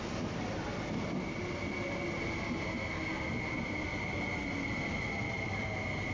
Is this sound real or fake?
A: real